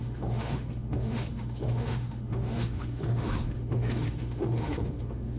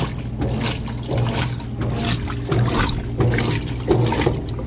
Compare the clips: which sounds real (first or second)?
second